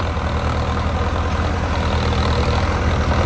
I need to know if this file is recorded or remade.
recorded